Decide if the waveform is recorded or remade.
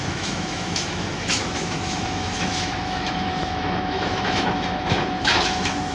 remade